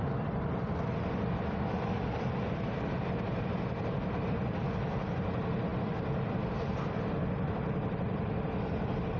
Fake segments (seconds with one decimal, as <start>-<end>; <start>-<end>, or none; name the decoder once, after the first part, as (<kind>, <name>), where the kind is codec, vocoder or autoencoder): none